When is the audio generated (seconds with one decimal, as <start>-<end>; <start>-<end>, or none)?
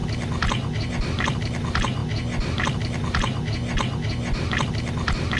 none